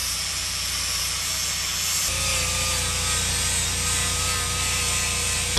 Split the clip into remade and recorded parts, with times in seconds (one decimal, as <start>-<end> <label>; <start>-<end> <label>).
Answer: 0.0-5.6 recorded